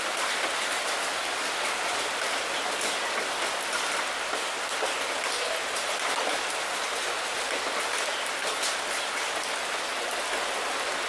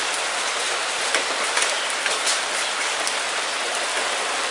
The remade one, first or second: second